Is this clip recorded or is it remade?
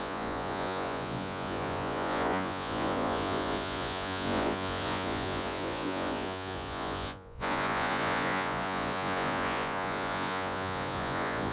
remade